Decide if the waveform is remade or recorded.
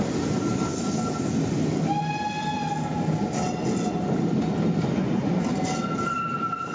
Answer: recorded